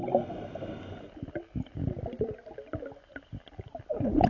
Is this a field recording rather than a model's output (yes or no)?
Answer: yes